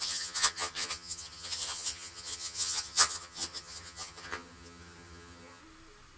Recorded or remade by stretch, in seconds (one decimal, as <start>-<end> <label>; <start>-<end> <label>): 0.0-5.6 remade; 5.6-6.2 recorded